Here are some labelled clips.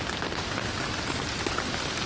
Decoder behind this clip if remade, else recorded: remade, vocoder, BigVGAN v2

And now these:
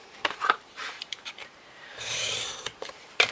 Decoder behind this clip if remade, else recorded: remade, vocoder, BigVGAN v2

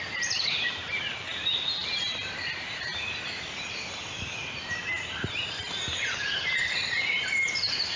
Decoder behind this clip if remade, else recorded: remade, vocoder, BigVGAN v2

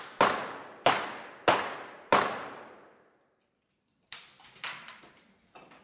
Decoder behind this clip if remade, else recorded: recorded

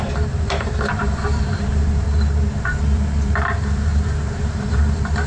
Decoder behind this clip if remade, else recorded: remade, vocoder, BigVGAN v2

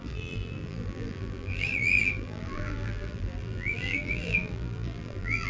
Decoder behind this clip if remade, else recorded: remade, vocoder, BigVGAN v2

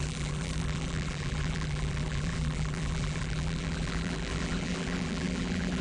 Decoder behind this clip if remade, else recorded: remade, vocoder, BigVGAN v2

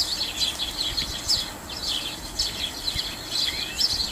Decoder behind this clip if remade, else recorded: recorded